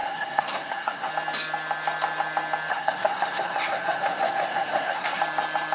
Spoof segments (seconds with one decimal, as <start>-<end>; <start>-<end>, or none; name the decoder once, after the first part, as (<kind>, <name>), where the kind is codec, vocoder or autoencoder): 0.0-1.1 (codec, SNAC); 2.7-5.2